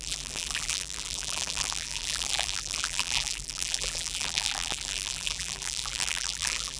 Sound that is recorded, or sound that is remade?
remade